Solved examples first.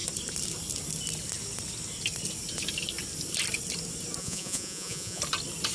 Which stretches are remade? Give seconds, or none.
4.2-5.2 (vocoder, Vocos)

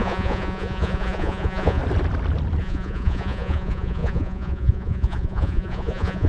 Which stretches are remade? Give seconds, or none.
0.0-1.8 (vocoder, Vocos); 2.6-6.3